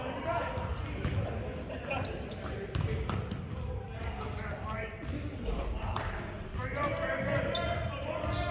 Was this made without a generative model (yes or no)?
yes